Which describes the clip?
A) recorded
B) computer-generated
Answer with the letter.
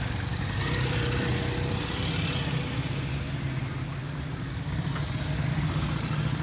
A